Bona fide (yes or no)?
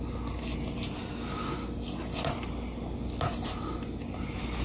yes